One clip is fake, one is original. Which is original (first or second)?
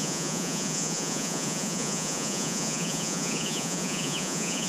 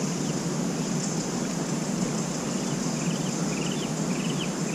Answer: second